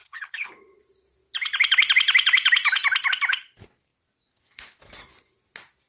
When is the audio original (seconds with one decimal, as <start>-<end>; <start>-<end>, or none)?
0.5-5.9